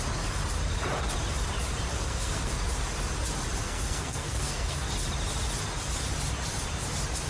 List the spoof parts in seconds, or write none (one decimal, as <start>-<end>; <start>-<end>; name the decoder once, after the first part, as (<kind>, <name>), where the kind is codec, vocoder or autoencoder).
1.9-2.6 (codec, SNAC); 3.6-4.9